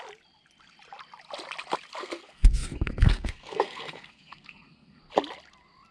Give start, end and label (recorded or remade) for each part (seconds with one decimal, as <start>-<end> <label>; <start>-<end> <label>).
0.0-2.0 recorded; 2.0-5.0 remade; 5.0-5.9 recorded